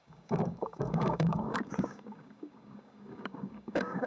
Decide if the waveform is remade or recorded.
remade